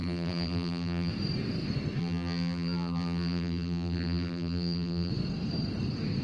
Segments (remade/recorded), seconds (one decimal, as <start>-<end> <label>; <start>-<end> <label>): 0.0-1.1 remade; 1.1-2.0 recorded; 2.0-5.1 remade; 5.1-6.2 recorded